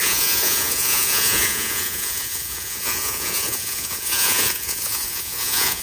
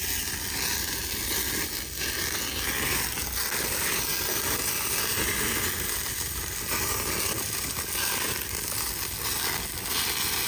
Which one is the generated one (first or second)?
first